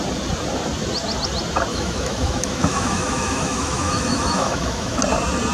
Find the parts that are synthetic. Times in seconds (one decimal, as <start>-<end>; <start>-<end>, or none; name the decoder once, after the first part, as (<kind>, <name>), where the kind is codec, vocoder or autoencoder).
1.7-5.0 (autoencoder, DAC-VAE)